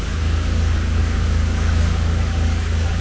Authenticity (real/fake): fake